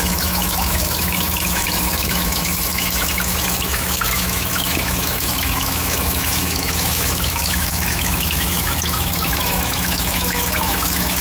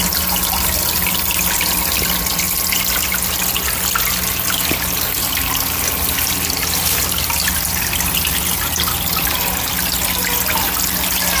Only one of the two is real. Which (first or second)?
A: second